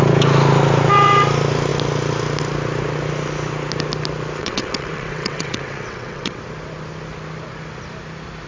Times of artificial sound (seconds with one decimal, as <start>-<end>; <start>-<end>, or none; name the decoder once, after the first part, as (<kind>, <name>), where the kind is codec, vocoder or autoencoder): 4.4-6.4 (vocoder, WaveNeXt)